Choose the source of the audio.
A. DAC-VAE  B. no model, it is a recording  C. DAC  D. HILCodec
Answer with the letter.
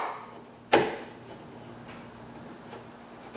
B